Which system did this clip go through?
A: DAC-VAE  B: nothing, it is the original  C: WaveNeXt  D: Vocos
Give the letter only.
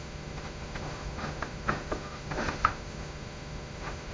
A